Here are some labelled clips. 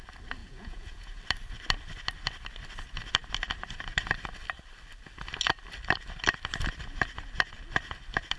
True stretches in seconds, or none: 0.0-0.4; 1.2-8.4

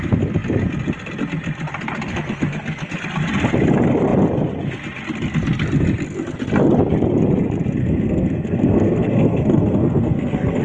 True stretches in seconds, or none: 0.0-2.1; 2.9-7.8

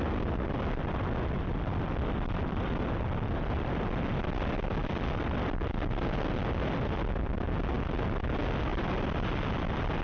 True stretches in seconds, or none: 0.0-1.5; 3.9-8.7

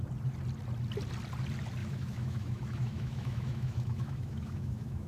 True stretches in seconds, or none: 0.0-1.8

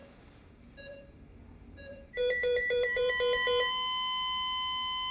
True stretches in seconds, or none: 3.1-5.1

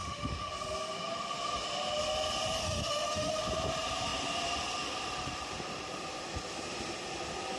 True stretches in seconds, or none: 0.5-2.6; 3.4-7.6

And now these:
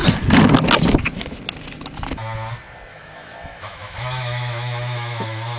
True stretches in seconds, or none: 0.0-2.9

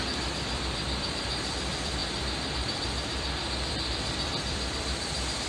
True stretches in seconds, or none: none